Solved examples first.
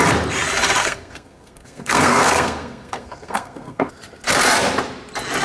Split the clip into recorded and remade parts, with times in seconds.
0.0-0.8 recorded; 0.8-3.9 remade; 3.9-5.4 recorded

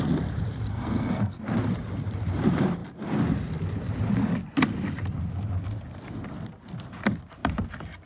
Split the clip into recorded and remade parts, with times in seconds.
0.0-0.7 recorded; 0.7-1.4 remade; 1.4-8.1 recorded

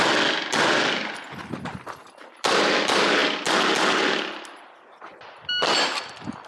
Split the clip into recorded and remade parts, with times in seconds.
0.0-6.5 recorded

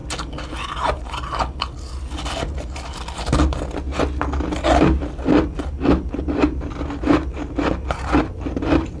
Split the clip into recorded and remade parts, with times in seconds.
0.0-9.0 recorded

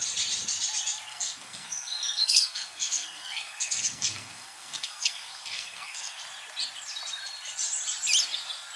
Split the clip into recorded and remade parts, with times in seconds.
0.0-1.1 recorded; 1.1-6.2 remade; 6.2-8.8 recorded

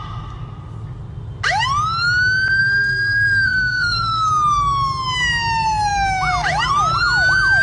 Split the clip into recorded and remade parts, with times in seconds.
0.0-2.6 recorded; 2.6-4.3 remade; 4.3-7.6 recorded

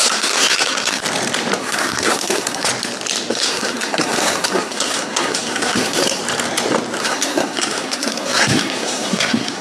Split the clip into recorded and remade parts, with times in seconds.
0.0-1.0 remade; 1.0-1.6 recorded; 1.6-2.7 remade; 2.7-3.3 recorded; 3.3-6.2 remade; 6.2-7.0 recorded; 7.0-9.6 remade

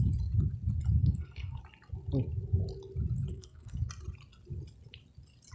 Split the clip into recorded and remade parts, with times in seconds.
0.0-1.0 recorded; 1.0-1.6 remade; 1.6-3.3 recorded; 3.3-3.9 remade; 3.9-5.5 recorded